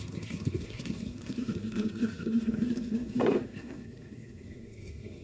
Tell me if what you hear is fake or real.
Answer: fake